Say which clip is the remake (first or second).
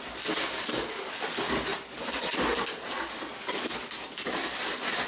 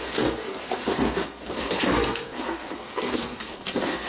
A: second